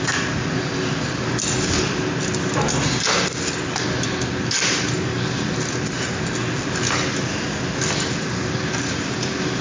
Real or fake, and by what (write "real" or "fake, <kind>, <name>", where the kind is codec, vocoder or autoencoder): real